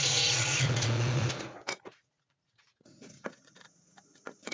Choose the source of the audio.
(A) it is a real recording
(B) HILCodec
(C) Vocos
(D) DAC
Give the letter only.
C